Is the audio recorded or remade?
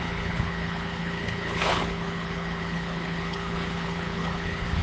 remade